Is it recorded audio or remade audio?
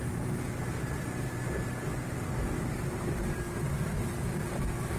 recorded